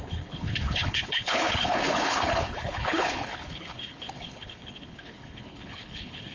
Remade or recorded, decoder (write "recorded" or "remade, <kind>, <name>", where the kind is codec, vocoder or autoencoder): remade, codec, HILCodec